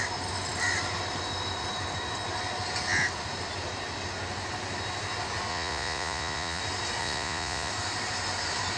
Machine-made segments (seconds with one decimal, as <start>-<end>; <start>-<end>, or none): 5.5-6.6; 7.0-7.7